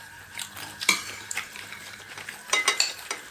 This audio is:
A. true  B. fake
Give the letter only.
B